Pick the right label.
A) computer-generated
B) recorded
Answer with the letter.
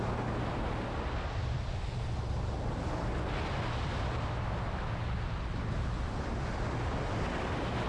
B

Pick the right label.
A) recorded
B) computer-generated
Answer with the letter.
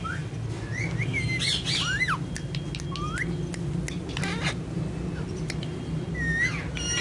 A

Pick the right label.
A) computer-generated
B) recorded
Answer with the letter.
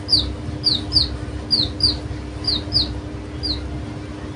B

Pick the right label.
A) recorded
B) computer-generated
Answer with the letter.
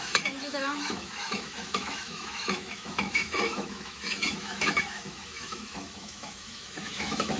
B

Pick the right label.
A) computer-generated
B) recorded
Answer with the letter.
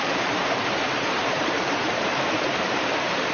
A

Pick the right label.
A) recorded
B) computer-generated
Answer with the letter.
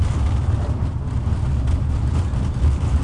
A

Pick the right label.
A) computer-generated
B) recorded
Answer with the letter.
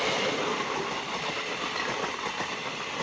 B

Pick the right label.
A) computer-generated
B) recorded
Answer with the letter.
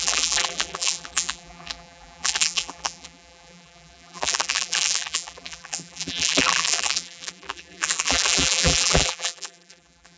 A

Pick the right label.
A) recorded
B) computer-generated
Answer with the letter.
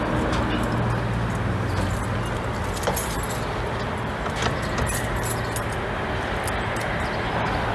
A